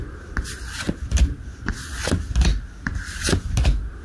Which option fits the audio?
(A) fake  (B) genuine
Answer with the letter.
B